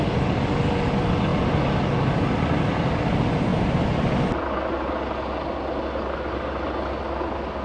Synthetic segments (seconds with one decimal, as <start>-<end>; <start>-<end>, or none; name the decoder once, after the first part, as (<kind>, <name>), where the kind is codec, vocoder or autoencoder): none